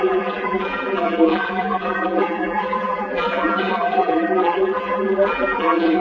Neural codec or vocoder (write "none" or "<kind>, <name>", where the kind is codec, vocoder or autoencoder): vocoder, BigVGAN v2